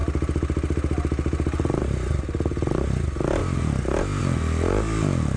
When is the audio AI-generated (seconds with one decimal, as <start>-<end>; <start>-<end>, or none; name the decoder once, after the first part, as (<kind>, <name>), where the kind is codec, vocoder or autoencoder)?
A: none